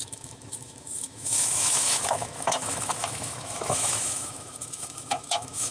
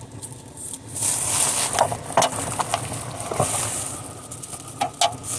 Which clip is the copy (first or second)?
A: first